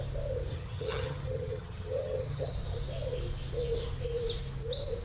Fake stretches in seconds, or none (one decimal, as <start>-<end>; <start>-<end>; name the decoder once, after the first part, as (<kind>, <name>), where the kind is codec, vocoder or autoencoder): 0.5-2.5 (vocoder, HiFi-GAN)